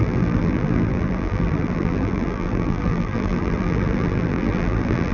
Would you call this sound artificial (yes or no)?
yes